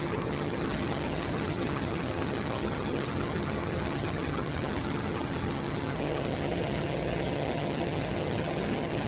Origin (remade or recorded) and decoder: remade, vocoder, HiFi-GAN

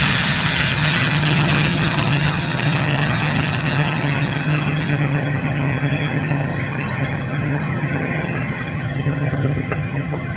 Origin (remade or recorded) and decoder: remade, vocoder, HiFi-GAN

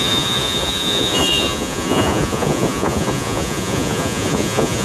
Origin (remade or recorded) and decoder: remade, vocoder, Vocos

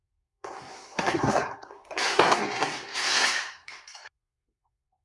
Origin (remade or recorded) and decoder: remade, codec, SNAC